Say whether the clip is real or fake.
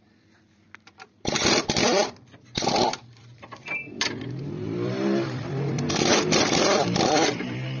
fake